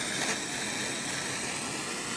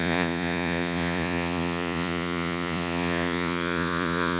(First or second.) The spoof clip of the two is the second